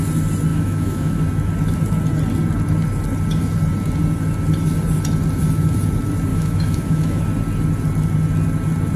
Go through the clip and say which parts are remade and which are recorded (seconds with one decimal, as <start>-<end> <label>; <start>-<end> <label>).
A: 0.0-0.5 recorded; 0.5-1.2 remade; 1.2-6.3 recorded; 6.3-7.2 remade; 7.2-9.0 recorded